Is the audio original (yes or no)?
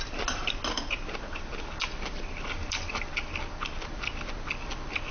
yes